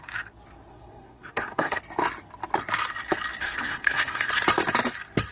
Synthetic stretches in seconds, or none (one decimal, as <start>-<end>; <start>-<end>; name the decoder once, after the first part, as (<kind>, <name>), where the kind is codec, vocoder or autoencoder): 0.7-1.8 (codec, SNAC); 3.4-4.3